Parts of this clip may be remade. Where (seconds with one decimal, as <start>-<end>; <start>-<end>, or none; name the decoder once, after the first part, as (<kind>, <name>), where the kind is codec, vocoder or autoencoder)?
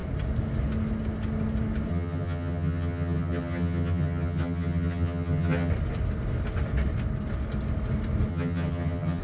1.9-5.7 (vocoder, HiFi-GAN); 8.3-9.2